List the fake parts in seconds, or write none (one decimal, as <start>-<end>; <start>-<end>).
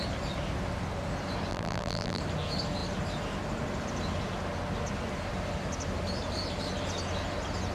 1.5-2.2